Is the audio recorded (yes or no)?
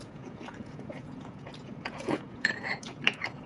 no